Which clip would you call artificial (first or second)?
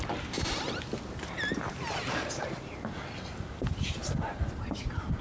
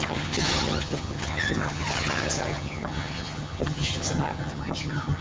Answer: second